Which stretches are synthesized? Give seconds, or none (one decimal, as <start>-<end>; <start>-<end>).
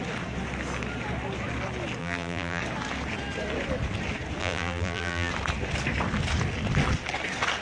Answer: 2.0-2.6; 4.4-5.3